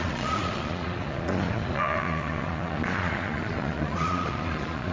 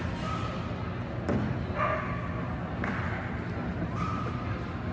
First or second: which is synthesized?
first